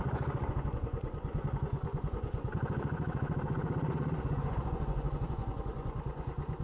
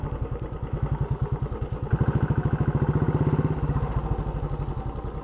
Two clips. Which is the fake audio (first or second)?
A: first